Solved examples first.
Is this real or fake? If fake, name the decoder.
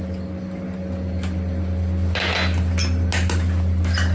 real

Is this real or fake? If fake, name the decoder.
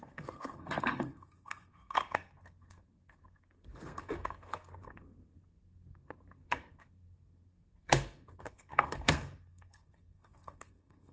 fake, codec, SNAC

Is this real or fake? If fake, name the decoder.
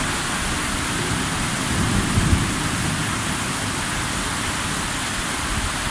real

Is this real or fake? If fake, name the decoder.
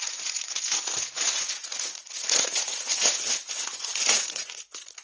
fake, vocoder, Vocos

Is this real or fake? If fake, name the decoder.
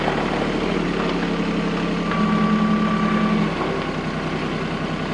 real